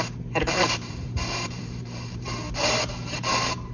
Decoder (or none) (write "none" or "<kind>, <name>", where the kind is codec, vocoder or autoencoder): vocoder, BigVGAN v2